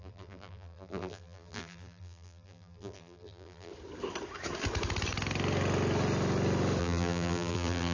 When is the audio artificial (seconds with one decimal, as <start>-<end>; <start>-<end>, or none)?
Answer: 0.0-3.7; 6.8-7.9